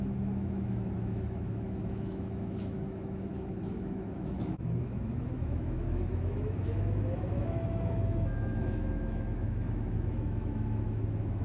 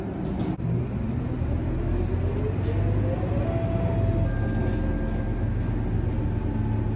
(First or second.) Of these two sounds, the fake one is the first